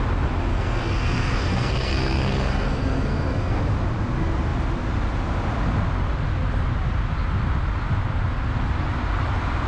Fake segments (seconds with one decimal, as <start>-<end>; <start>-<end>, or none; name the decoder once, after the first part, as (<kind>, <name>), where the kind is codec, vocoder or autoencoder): 0.5-3.6 (codec, SNAC)